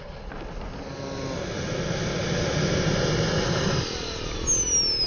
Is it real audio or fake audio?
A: real